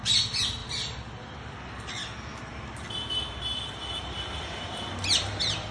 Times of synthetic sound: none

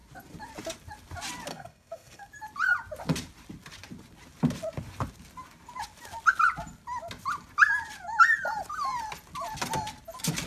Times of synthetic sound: 1.5-2.3 (codec, SNAC)

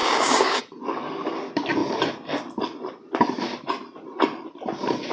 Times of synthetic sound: 0.0-0.6 (codec, DAC)

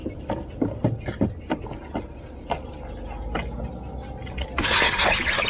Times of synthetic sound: 0.0-0.7 (vocoder, BigVGAN v2); 4.2-4.9

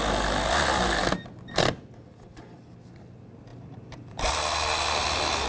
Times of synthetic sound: none

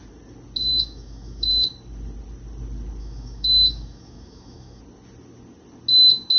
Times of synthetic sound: 0.7-1.5 (autoencoder, DAC-VAE); 3.0-4.8

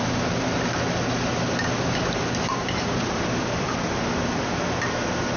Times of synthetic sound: 1.3-4.5 (vocoder, BigVGAN v2)

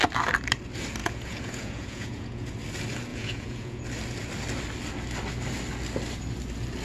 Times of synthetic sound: 1.0-2.5 (vocoder, Vocos); 3.1-3.8